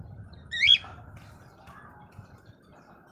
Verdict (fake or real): real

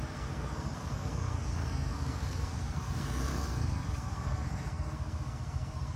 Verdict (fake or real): fake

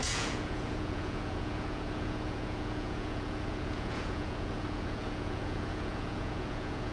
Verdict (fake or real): fake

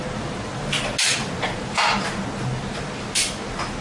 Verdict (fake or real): real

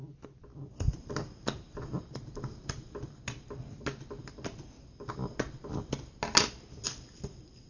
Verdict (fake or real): real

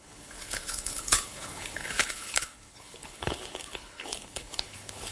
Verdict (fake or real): fake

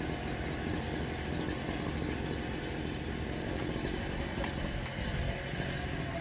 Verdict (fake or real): real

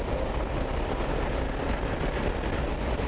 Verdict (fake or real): real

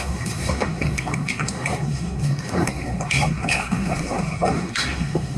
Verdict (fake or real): fake